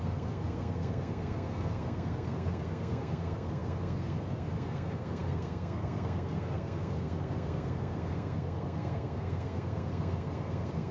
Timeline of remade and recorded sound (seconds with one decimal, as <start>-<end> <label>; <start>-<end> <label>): 0.0-10.9 remade